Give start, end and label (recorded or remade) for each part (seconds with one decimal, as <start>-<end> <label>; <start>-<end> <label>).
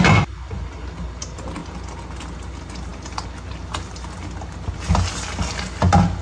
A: 0.0-6.2 recorded